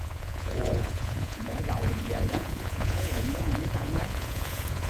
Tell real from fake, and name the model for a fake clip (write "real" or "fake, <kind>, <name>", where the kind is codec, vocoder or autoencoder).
fake, vocoder, Vocos